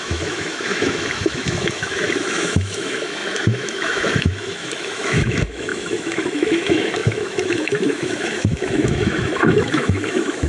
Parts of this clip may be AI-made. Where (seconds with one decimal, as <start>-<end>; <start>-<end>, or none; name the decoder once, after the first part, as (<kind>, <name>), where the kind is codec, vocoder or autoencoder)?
0.0-10.5 (autoencoder, DAC-VAE)